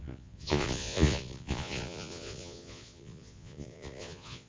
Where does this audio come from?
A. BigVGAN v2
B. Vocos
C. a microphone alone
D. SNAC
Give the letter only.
B